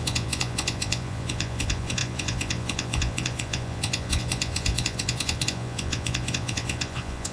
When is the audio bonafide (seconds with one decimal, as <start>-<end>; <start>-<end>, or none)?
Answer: none